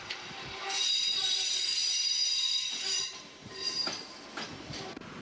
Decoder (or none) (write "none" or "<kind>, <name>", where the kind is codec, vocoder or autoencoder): none